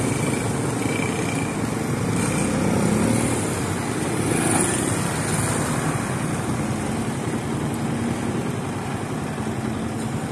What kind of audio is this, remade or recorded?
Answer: recorded